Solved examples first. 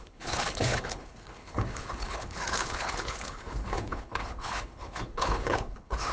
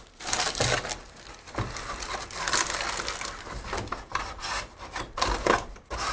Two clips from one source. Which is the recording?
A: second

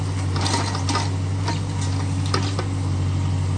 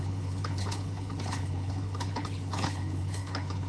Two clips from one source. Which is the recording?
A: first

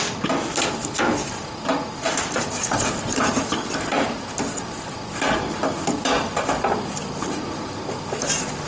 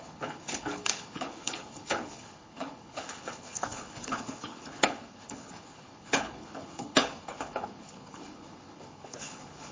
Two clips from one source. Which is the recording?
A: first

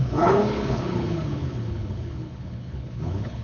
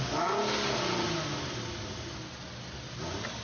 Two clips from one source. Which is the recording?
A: second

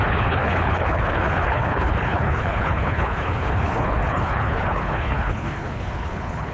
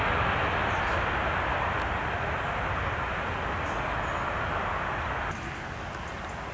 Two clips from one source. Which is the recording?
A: second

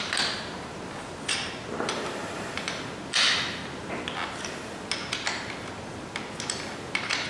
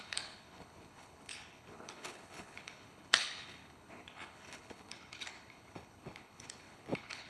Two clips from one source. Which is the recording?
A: first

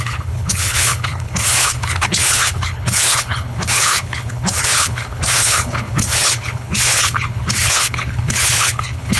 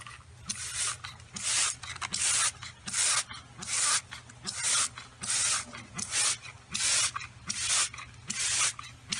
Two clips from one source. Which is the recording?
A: second